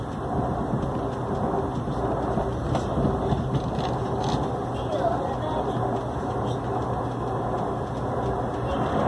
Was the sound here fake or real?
real